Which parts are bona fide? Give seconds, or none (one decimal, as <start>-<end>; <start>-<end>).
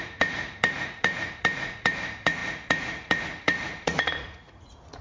none